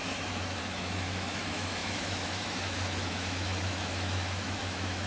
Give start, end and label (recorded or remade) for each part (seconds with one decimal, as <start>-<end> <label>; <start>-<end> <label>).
0.0-5.1 remade